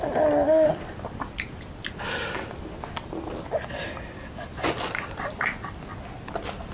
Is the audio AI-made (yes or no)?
no